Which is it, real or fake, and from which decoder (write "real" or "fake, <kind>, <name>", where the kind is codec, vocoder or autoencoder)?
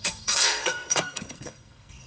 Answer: fake, codec, SNAC